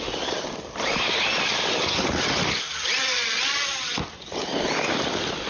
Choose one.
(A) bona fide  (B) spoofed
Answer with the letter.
A